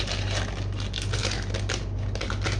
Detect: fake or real real